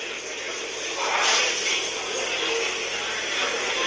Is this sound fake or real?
real